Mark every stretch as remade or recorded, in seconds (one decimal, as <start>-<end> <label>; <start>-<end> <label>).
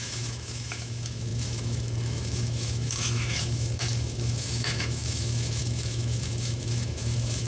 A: 0.0-7.5 remade